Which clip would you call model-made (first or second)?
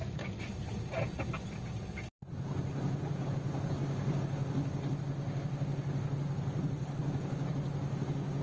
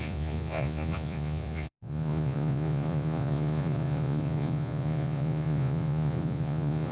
second